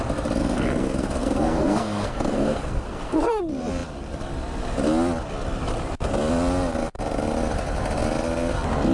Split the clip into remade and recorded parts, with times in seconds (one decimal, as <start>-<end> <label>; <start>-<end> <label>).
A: 0.0-0.4 recorded; 0.4-3.4 remade; 3.4-8.9 recorded